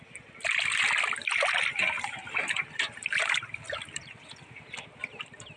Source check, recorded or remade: recorded